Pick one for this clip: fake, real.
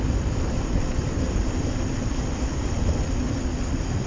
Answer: real